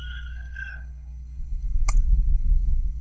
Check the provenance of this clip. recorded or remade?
remade